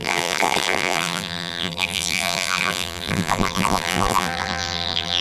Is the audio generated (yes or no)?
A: yes